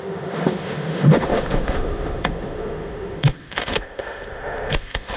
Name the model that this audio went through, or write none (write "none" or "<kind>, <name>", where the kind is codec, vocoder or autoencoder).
autoencoder, DAC-VAE